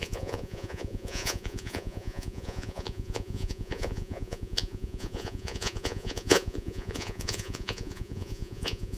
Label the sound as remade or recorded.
remade